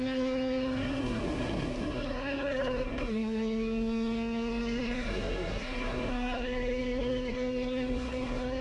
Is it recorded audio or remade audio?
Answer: remade